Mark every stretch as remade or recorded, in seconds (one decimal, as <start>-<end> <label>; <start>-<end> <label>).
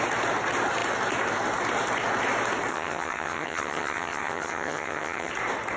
0.0-2.7 recorded; 2.7-5.3 remade; 5.3-5.8 recorded